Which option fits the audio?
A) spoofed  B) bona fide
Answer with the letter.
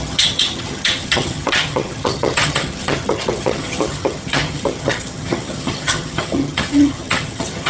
A